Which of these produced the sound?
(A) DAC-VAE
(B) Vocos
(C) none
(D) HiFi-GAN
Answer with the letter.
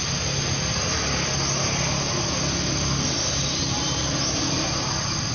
C